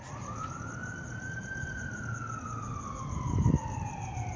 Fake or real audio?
real